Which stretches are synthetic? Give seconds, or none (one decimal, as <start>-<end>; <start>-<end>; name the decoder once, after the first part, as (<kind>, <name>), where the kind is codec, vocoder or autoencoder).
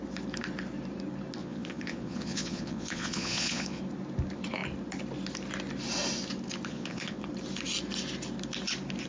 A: 1.4-3.8 (vocoder, Vocos); 6.7-7.3